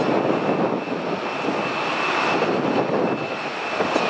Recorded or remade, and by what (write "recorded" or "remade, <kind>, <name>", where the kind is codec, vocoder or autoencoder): recorded